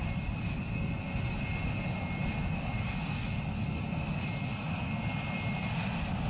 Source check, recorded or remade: recorded